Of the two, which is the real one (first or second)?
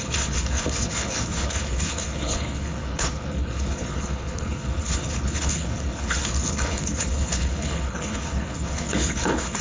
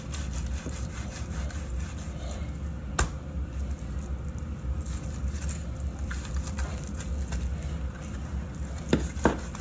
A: second